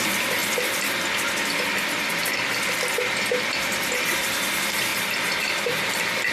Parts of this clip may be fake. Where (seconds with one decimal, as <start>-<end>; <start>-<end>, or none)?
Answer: 0.0-0.4; 4.2-4.9; 5.6-6.3